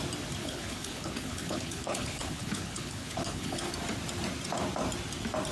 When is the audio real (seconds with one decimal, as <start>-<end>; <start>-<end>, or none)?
0.0-0.4; 3.7-5.5